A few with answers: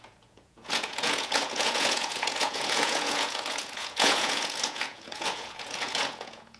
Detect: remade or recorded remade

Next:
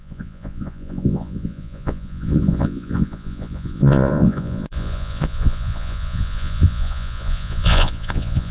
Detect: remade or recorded remade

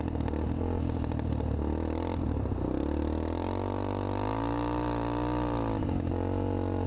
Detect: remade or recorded recorded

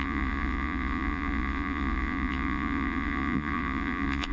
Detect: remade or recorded remade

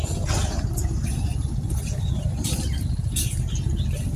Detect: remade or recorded recorded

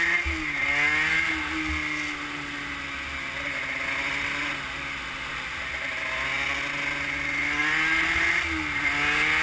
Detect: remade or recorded recorded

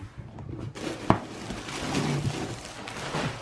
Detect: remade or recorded recorded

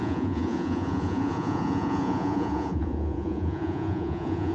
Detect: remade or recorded remade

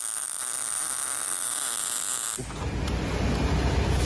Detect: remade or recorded recorded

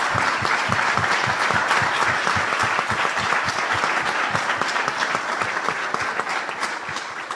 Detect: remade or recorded recorded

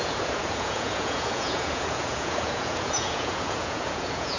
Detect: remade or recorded remade